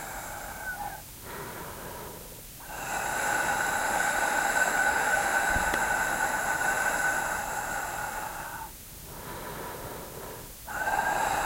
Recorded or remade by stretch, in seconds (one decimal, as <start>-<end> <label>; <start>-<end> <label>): 0.0-3.8 recorded; 3.8-5.5 remade; 5.5-11.5 recorded